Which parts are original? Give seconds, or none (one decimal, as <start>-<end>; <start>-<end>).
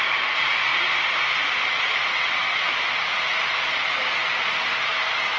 0.0-2.1; 2.7-5.4